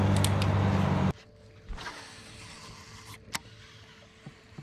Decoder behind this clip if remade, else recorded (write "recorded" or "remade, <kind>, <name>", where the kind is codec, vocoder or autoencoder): recorded